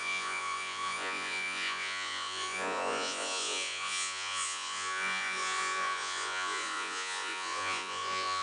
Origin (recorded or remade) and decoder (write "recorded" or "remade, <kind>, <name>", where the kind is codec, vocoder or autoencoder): remade, vocoder, Vocos